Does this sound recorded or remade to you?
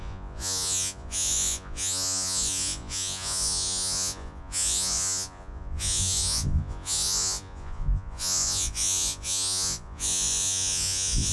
remade